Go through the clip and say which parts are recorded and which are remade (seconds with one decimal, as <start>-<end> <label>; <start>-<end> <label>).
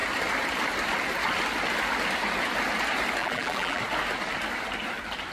0.0-3.2 recorded; 3.2-3.8 remade; 3.8-5.3 recorded